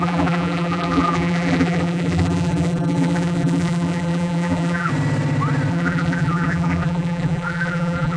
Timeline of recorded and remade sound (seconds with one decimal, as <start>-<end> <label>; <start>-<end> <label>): 0.0-4.9 remade; 4.9-5.7 recorded; 5.7-8.2 remade